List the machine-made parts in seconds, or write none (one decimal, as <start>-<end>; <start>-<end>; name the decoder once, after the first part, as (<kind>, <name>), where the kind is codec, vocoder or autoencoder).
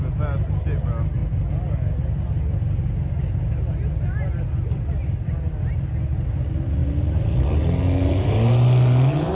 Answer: none